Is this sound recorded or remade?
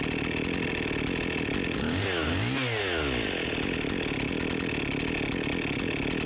recorded